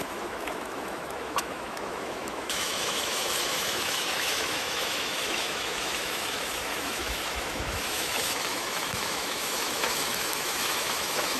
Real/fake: fake